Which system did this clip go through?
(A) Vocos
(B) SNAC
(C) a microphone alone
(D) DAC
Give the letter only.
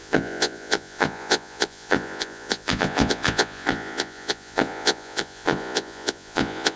A